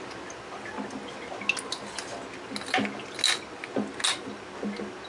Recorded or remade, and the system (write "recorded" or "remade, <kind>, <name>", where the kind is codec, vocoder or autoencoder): recorded